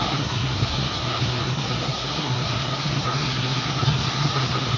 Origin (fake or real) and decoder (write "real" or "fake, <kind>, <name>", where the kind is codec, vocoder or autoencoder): fake, codec, SNAC